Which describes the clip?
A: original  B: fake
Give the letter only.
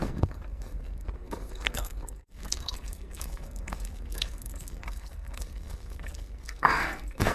B